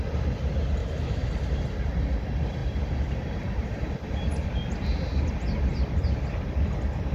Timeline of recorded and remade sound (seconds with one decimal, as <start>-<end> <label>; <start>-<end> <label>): 0.0-0.8 recorded; 0.8-1.3 remade; 1.3-7.1 recorded